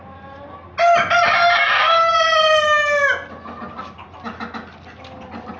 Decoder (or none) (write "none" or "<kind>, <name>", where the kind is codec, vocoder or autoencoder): none